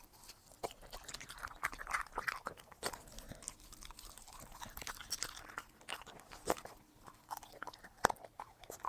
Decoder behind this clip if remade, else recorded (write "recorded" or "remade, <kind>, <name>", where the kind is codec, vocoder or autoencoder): recorded